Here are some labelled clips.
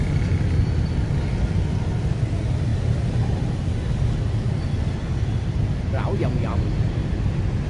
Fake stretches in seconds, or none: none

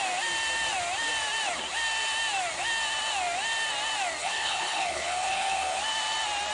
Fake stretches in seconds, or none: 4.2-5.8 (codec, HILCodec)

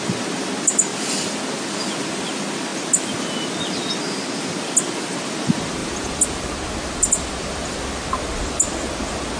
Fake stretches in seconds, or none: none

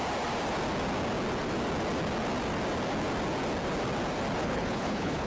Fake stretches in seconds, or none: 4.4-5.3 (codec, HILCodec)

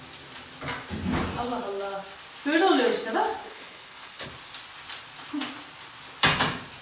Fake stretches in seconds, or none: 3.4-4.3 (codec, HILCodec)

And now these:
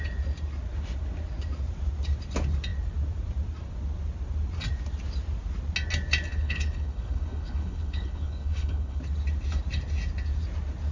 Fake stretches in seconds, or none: 6.3-9.0 (codec, HILCodec)

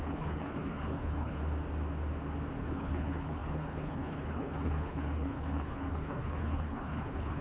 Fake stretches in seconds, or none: 0.0-1.4 (codec, HILCodec); 2.6-7.4